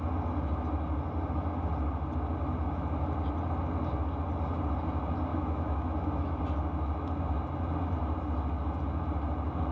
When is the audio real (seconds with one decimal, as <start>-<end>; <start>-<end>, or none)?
0.0-5.3; 6.4-9.7